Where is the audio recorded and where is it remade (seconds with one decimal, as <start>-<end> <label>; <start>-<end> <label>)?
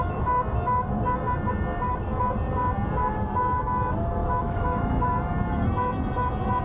0.0-4.2 recorded; 4.2-5.1 remade; 5.1-6.6 recorded